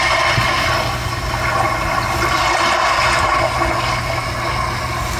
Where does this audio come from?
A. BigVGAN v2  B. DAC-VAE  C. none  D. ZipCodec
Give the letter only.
C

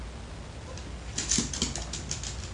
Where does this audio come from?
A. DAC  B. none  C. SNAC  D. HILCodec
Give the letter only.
B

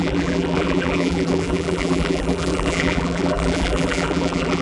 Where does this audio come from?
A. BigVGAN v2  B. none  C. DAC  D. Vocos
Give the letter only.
A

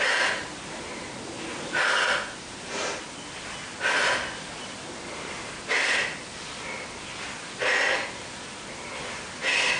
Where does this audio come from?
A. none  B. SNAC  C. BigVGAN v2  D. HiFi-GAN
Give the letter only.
A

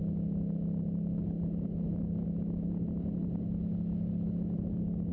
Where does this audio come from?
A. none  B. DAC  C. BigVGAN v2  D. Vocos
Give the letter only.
A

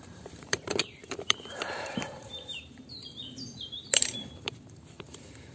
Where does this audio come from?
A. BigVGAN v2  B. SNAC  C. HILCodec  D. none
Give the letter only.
A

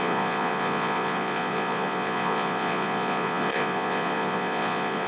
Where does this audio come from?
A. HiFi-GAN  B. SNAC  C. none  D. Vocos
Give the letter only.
D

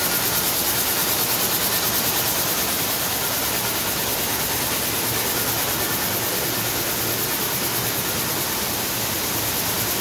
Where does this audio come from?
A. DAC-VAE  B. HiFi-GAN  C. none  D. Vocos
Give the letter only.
C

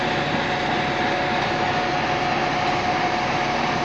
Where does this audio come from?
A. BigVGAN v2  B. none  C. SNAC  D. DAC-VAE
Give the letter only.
B